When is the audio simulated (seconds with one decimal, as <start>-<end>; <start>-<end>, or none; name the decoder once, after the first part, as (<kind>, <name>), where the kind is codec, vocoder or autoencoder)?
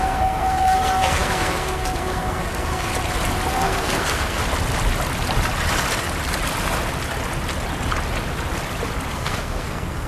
0.0-2.9 (codec, SNAC); 3.5-4.4; 9.1-10.1